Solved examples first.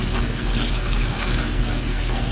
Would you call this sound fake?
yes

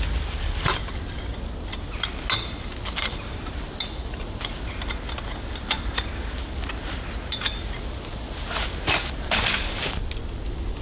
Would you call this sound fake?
no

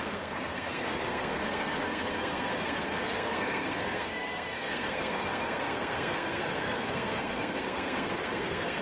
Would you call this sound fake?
yes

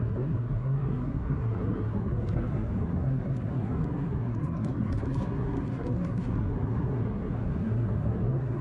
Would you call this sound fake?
yes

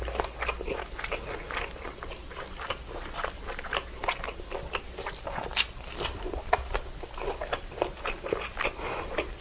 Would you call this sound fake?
no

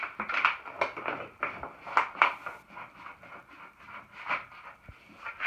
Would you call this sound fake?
no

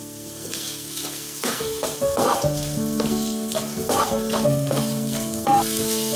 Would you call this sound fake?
yes